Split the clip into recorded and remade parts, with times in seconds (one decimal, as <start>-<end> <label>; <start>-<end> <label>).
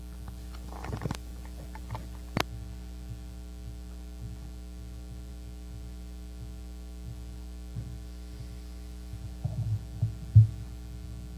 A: 0.0-11.4 recorded